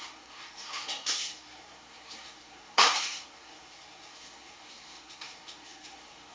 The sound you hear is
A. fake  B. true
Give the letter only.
A